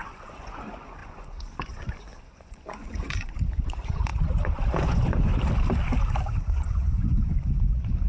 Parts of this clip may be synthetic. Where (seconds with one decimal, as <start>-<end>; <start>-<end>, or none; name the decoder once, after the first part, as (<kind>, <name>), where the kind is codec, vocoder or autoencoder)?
0.0-5.3 (vocoder, Vocos); 6.3-8.1